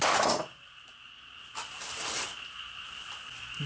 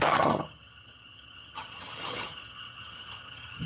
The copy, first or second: second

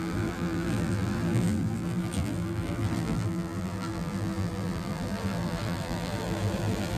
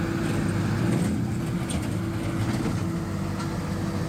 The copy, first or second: first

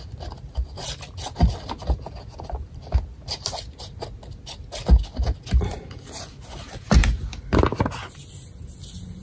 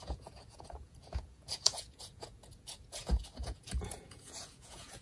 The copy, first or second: second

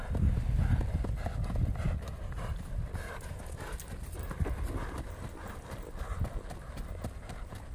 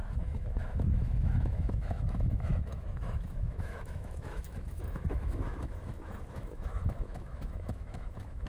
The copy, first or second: second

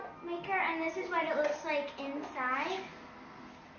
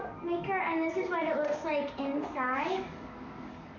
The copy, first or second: second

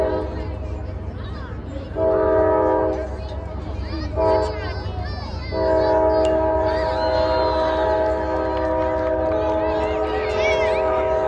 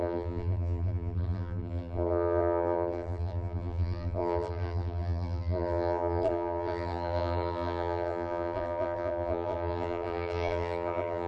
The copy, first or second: second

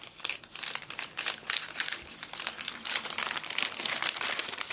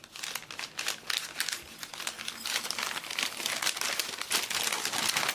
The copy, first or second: first